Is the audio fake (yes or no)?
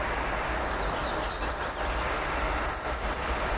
no